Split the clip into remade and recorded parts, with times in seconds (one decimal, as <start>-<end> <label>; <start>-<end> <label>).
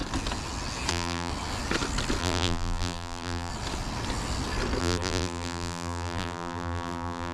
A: 0.0-0.9 recorded; 0.9-1.3 remade; 1.3-2.2 recorded; 2.2-3.5 remade; 3.5-4.8 recorded; 4.8-7.3 remade